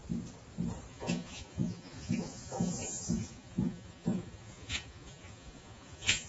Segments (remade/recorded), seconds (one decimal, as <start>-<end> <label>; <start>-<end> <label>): 0.0-0.9 recorded; 0.9-6.3 remade